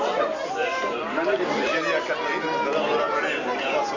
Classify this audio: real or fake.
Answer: real